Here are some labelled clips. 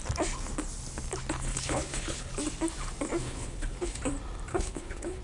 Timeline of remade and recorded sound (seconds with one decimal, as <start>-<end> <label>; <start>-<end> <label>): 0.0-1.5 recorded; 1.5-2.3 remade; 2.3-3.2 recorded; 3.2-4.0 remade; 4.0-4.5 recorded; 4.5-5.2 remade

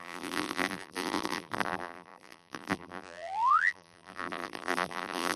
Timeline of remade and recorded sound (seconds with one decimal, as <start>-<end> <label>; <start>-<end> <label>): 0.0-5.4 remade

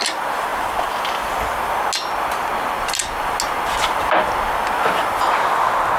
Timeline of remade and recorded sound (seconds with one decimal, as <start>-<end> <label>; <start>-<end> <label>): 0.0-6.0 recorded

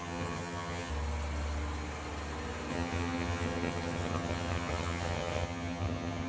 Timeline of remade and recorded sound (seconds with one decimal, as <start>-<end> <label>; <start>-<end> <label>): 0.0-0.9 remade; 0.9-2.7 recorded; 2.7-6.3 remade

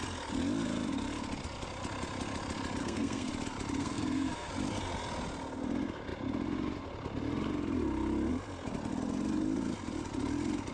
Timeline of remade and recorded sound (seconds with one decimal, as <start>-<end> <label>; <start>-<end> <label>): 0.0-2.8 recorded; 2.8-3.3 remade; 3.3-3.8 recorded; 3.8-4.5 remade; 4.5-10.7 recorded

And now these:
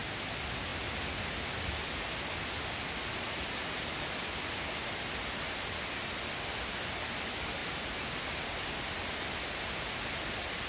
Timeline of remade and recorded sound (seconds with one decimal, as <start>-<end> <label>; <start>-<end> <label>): 0.0-10.7 recorded

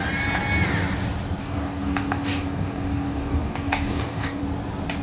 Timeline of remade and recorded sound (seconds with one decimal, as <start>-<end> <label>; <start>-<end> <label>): 0.0-1.4 recorded; 1.4-4.4 remade; 4.4-5.0 recorded